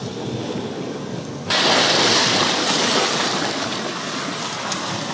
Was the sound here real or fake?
real